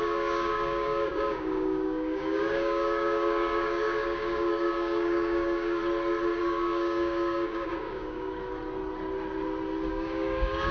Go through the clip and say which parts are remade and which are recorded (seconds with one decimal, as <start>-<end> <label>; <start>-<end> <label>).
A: 0.0-5.8 remade; 5.8-6.4 recorded; 6.4-8.4 remade; 8.4-9.9 recorded; 9.9-10.7 remade